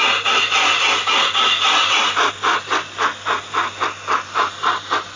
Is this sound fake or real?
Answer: real